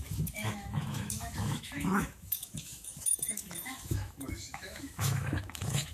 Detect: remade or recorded remade